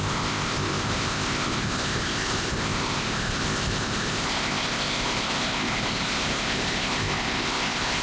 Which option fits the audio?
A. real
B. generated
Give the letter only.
B